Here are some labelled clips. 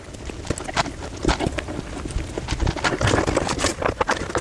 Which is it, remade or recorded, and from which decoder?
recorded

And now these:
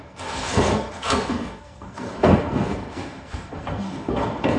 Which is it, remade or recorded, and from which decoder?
remade, codec, SNAC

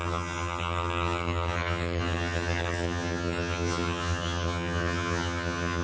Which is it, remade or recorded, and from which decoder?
remade, vocoder, HiFi-GAN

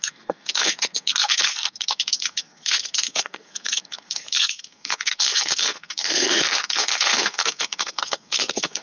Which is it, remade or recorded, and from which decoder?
remade, codec, SNAC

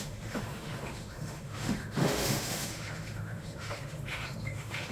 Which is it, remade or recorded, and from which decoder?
remade, autoencoder, DAC-VAE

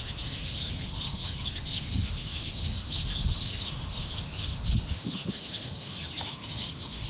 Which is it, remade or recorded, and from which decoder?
remade, autoencoder, DAC-VAE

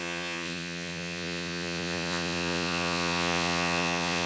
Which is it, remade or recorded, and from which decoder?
remade, vocoder, Vocos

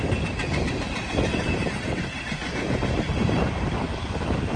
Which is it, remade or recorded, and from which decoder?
remade, vocoder, BigVGAN v2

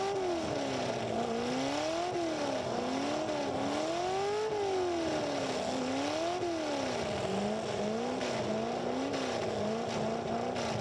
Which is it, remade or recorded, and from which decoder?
recorded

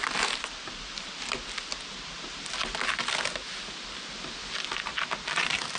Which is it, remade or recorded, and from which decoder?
recorded